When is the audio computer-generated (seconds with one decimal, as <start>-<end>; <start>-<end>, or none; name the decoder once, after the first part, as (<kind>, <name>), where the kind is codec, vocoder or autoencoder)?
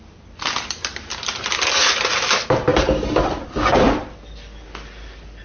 2.7-3.4 (vocoder, BigVGAN v2)